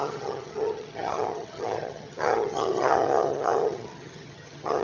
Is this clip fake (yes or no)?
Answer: yes